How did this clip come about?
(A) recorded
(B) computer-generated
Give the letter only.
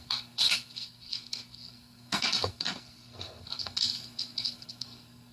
B